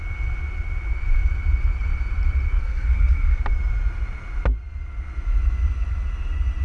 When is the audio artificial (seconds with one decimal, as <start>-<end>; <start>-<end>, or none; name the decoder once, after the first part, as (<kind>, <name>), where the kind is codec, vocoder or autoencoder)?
2.6-3.4 (codec, SNAC)